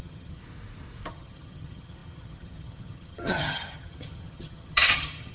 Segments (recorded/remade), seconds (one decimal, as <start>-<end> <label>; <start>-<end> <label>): 0.0-0.4 remade; 0.4-1.1 recorded; 1.1-5.3 remade